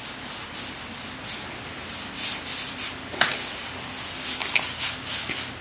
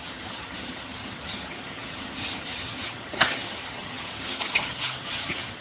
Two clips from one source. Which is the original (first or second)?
first